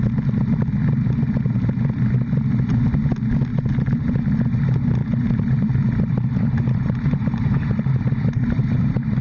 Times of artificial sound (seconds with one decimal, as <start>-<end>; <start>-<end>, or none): 3.5-4.4; 5.0-9.2